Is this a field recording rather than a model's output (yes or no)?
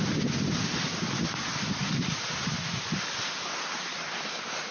yes